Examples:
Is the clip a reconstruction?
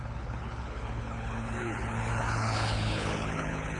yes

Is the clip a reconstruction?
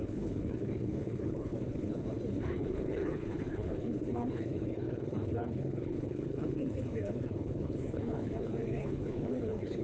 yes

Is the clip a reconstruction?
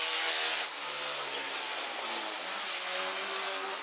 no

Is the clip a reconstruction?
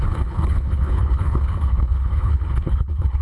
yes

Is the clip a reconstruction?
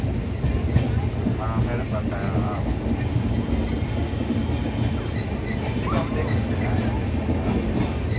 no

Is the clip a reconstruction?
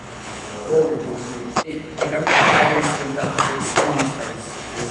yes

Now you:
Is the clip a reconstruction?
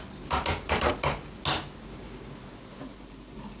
no